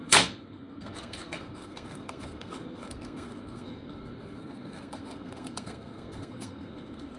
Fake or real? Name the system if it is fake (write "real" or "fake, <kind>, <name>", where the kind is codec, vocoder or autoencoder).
fake, codec, SNAC